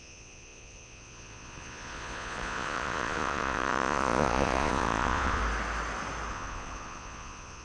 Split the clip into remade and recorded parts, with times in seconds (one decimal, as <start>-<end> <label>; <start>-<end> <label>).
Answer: 0.0-5.4 remade; 5.4-6.3 recorded; 6.3-7.6 remade